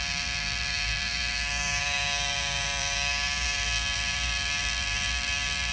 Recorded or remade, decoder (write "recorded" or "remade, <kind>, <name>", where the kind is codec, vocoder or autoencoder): remade, vocoder, BigVGAN v2